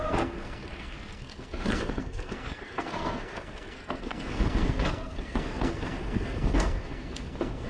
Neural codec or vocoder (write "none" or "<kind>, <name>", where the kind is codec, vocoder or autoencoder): codec, SNAC